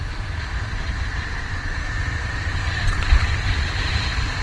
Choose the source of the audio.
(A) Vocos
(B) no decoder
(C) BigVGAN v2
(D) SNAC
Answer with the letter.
C